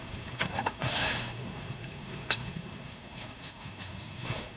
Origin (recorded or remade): remade